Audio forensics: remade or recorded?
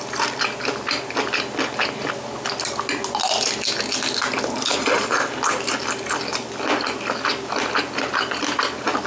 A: recorded